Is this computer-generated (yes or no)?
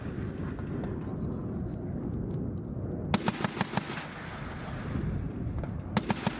no